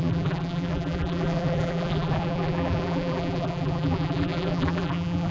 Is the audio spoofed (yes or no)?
yes